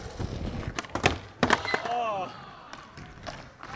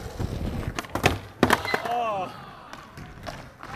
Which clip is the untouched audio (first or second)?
second